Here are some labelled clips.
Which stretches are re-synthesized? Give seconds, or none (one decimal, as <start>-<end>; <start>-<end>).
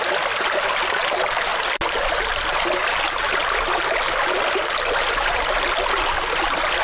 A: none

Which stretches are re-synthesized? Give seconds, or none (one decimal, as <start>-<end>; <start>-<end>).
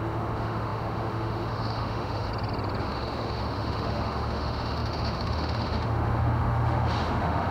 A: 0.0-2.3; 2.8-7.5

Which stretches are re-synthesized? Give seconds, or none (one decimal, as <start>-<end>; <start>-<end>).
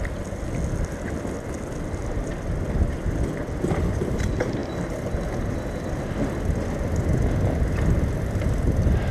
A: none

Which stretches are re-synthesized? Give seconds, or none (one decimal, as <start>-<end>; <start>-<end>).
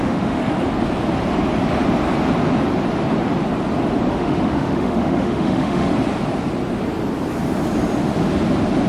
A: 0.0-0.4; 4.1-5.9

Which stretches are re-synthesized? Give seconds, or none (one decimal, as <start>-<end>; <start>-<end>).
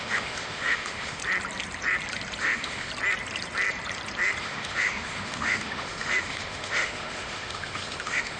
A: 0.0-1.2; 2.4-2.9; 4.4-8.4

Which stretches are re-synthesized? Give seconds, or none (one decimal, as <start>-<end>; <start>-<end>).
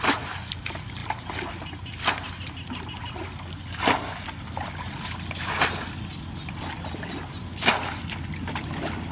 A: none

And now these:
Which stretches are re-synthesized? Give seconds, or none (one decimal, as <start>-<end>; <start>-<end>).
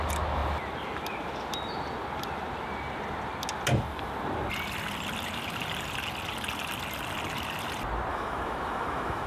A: 8.1-9.3